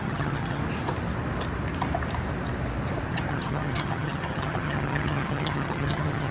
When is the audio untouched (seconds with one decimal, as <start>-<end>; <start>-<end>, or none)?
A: 0.6-3.3